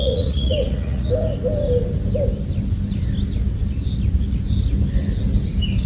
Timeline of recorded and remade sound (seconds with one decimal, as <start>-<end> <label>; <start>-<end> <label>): 0.0-1.1 remade; 1.1-5.9 recorded